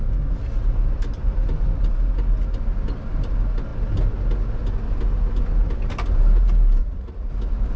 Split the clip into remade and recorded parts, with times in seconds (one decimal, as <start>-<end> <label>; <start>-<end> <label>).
0.0-6.8 recorded; 6.8-7.3 remade; 7.3-7.8 recorded